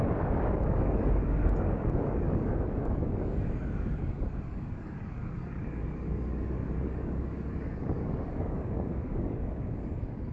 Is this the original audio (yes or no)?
no